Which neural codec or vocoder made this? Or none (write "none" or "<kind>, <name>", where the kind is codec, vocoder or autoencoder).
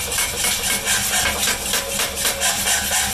none